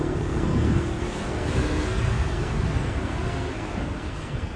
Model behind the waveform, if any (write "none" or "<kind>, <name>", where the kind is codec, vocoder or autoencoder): codec, SNAC